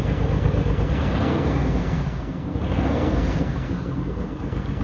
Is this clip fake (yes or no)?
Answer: yes